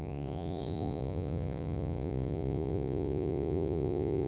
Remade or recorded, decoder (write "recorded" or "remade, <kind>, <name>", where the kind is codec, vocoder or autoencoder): remade, vocoder, Vocos